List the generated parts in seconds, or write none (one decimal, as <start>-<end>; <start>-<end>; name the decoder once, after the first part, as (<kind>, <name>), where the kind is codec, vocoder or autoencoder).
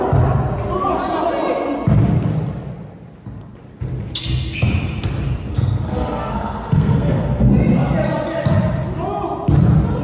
5.5-7.5 (codec, SNAC)